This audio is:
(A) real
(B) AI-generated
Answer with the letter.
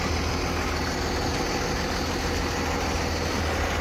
A